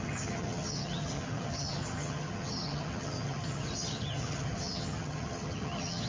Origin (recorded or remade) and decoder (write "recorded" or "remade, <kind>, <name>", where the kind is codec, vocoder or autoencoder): remade, vocoder, HiFi-GAN